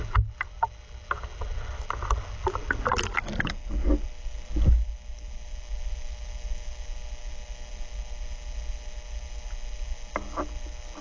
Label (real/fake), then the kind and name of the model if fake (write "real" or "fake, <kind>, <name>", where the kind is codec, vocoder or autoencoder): real